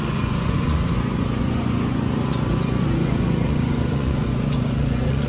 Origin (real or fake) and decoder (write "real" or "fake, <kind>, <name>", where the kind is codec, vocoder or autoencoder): fake, vocoder, Vocos